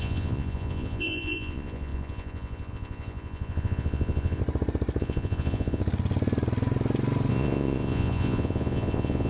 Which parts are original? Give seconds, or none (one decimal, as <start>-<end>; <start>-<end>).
4.4-5.0; 5.8-7.3